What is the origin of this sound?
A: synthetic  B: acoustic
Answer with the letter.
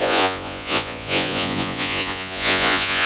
A